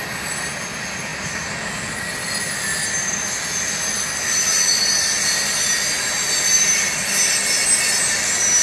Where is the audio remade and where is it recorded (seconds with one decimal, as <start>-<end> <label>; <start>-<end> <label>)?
0.0-8.6 recorded